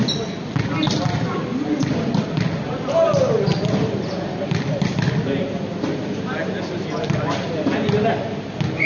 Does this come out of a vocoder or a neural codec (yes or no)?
no